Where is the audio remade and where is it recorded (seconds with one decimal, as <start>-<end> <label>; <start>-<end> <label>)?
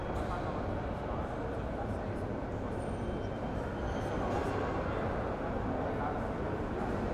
0.0-7.1 recorded